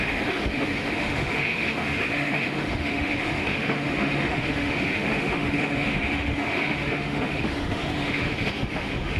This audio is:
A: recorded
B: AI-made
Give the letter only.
B